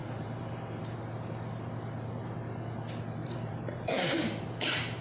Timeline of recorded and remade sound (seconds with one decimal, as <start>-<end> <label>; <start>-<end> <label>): 0.0-0.8 remade; 0.8-3.2 recorded; 3.2-5.0 remade